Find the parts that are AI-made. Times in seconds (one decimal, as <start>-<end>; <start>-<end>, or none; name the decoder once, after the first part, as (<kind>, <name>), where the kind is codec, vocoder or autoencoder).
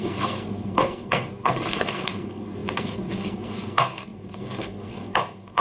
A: 0.0-5.6 (codec, SNAC)